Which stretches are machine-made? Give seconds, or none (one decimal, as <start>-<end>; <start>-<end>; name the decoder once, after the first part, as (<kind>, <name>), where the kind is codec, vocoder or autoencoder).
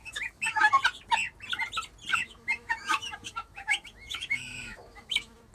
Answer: 0.0-0.7 (autoencoder, DAC-VAE); 2.1-5.5